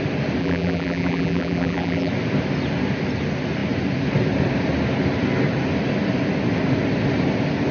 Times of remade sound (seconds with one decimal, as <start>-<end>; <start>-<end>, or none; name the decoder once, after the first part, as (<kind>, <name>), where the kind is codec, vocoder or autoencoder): 0.4-2.1 (vocoder, BigVGAN v2)